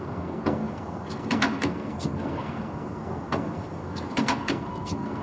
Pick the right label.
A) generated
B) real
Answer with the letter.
A